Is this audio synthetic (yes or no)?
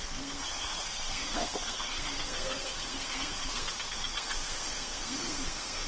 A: yes